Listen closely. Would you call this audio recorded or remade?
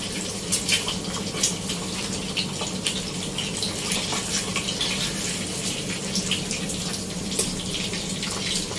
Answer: recorded